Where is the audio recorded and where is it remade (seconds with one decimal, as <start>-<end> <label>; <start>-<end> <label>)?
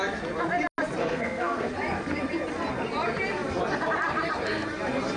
0.0-1.0 recorded; 1.0-1.7 remade; 1.7-5.2 recorded